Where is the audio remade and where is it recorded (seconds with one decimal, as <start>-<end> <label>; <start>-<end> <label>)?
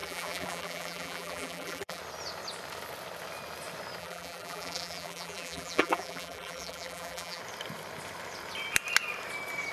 0.0-2.0 remade; 2.0-4.0 recorded; 4.0-7.4 remade; 7.4-9.7 recorded